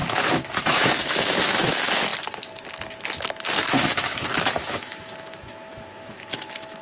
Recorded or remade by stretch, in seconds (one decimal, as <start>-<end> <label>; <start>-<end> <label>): 0.0-2.1 remade; 2.1-3.7 recorded; 3.7-6.8 remade